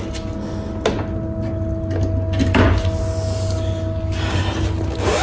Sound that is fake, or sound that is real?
real